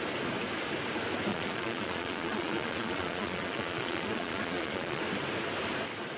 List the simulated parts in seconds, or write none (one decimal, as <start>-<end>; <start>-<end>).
1.3-5.0